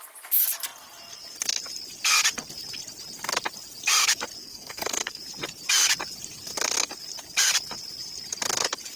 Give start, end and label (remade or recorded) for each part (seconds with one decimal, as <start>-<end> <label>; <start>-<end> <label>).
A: 0.0-4.4 recorded; 4.4-5.2 remade; 5.2-9.0 recorded